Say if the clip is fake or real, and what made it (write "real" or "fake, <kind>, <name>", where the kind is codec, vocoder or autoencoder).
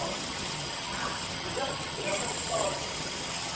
fake, vocoder, HiFi-GAN